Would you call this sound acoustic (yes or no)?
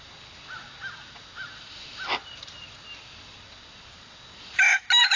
yes